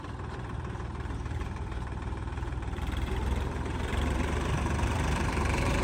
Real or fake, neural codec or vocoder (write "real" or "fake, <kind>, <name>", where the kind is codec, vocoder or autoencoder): fake, vocoder, BigVGAN v2